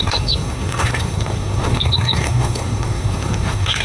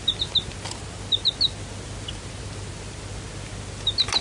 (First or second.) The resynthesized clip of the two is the first